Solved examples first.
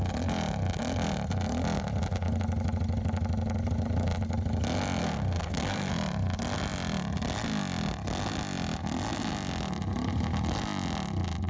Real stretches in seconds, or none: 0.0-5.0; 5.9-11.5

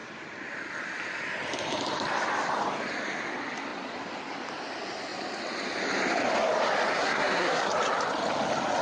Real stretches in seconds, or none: 0.0-6.9; 7.7-8.8

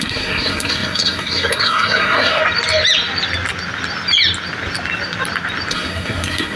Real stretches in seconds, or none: 2.4-5.7